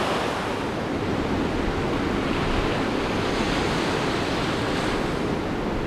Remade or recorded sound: recorded